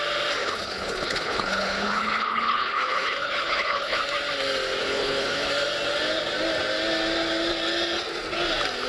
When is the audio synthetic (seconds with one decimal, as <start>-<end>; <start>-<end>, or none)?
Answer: 0.4-4.0; 4.8-5.5